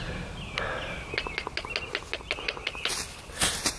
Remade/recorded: recorded